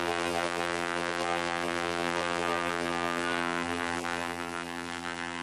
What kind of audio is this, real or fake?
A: fake